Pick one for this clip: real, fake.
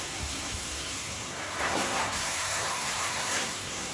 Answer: fake